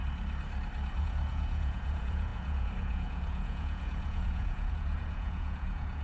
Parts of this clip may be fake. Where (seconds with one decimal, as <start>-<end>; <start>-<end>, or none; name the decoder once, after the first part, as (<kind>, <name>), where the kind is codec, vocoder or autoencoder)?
1.0-6.0 (vocoder, Vocos)